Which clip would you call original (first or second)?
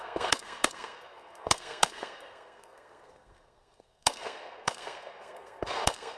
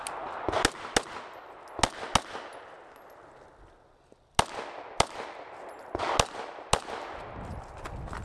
second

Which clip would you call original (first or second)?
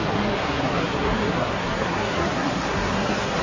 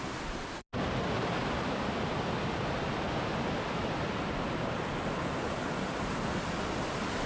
second